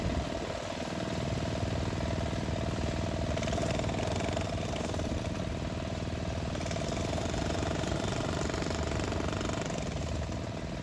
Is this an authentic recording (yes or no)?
no